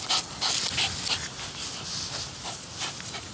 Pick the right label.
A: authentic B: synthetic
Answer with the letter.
A